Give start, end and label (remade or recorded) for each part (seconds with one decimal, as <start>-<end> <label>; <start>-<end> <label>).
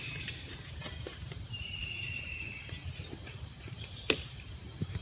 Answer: 0.0-5.0 remade